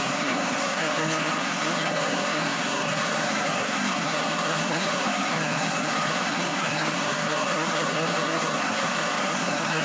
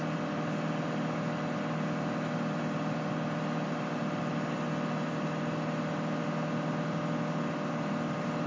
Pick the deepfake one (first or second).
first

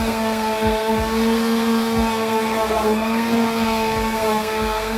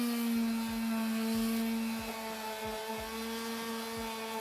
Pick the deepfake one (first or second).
first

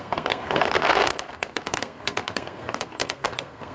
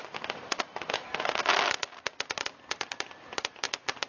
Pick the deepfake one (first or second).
first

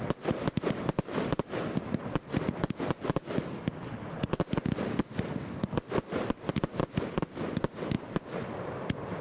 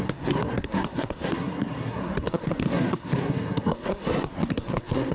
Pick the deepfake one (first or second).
second